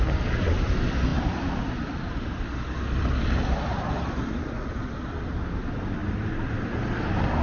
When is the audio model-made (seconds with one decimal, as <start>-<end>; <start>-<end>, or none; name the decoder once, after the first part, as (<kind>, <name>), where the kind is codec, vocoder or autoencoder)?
none